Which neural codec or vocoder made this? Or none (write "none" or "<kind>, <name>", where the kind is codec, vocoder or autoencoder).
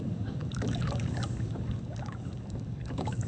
codec, DAC